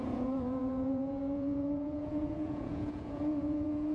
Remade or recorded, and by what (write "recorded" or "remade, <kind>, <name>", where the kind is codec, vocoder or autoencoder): remade, vocoder, Vocos